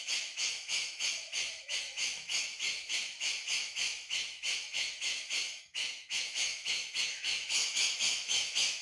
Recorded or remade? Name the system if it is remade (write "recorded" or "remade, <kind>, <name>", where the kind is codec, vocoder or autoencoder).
remade, autoencoder, DAC-VAE